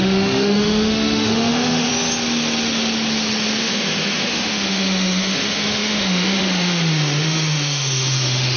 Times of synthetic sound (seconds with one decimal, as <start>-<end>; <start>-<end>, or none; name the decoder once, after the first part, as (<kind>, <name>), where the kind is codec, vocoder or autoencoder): 0.0-1.9 (autoencoder, DAC-VAE); 3.6-8.6